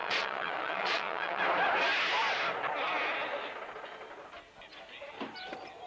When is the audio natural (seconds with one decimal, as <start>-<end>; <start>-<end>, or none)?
1.4-5.9